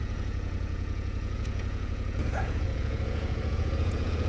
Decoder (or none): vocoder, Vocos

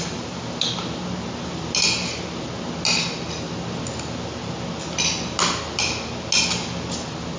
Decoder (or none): none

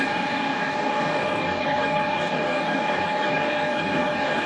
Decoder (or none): codec, DAC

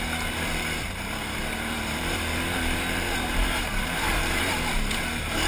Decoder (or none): vocoder, BigVGAN v2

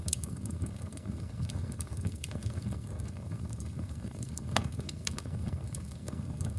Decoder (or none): codec, SNAC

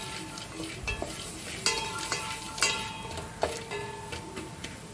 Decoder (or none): none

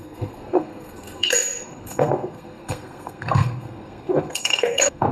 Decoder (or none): codec, SNAC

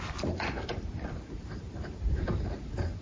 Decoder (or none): vocoder, BigVGAN v2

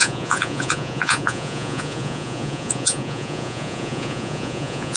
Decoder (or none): vocoder, Vocos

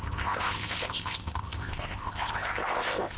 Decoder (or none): codec, ZipCodec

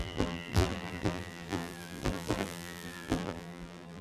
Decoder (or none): vocoder, BigVGAN v2